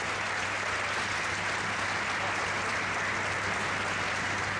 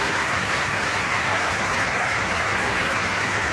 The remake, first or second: second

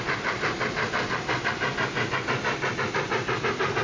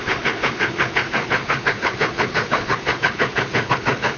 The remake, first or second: second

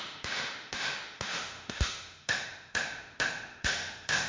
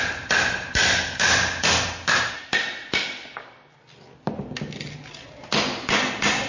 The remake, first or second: first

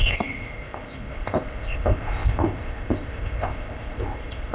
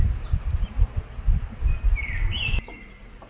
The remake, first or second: first